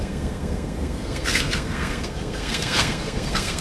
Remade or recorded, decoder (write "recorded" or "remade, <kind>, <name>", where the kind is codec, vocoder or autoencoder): remade, codec, SNAC